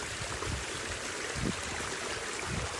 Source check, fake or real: real